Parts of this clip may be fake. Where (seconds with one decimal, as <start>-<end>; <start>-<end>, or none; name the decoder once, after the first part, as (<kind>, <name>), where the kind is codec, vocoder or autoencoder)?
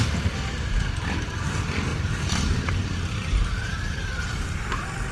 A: 1.9-5.1 (vocoder, BigVGAN v2)